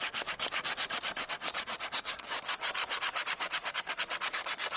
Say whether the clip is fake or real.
real